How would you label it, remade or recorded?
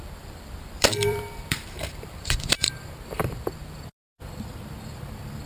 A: remade